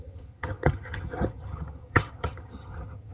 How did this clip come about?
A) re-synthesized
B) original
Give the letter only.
A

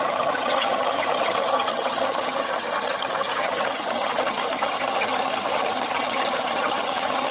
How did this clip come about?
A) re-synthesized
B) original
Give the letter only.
A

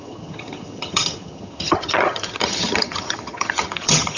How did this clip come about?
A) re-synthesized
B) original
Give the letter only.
A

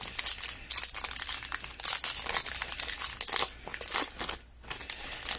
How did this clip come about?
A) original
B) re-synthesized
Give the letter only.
A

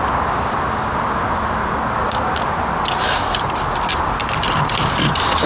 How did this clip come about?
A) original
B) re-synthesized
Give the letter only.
A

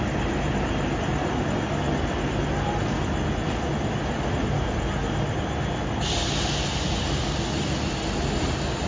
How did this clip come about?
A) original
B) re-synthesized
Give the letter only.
A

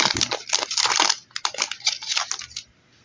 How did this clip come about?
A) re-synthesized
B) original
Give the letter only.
B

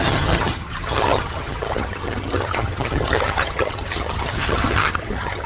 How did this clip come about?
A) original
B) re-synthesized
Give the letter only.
B